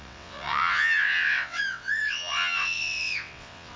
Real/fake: fake